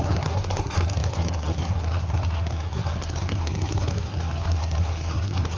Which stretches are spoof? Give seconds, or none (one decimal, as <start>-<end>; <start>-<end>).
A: 0.0-5.6